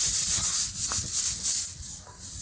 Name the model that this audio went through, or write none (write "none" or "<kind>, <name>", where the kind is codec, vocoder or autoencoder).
none